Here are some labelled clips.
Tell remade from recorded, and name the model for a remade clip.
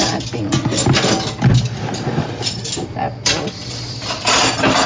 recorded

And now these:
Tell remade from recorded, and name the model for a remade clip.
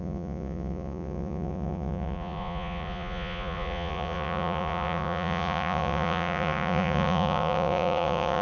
remade, vocoder, Vocos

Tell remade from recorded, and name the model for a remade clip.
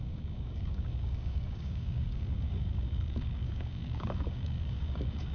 remade, codec, DAC